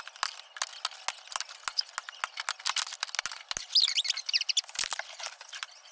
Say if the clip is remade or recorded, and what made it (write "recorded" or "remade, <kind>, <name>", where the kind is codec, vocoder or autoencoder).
recorded